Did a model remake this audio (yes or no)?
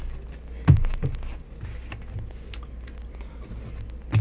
no